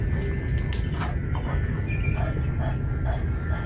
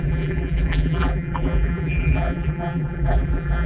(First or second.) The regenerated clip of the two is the second